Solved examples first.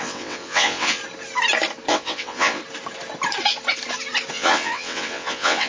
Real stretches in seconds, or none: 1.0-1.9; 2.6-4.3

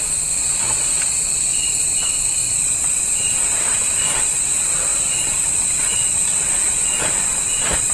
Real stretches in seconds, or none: 0.0-7.9

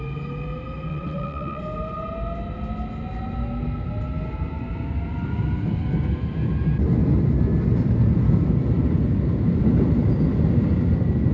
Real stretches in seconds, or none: 0.0-0.9; 1.6-11.3